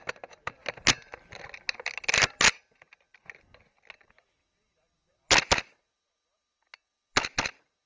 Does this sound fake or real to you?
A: real